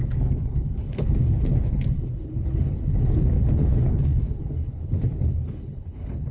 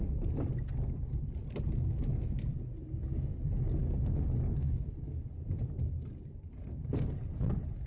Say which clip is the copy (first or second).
first